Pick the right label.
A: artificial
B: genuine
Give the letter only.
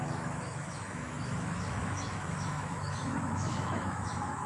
A